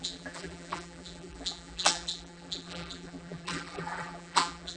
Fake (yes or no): yes